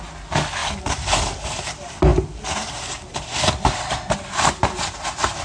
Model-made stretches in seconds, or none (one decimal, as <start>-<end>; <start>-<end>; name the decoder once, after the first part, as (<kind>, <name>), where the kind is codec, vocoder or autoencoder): 0.6-1.4 (vocoder, BigVGAN v2); 2.1-4.6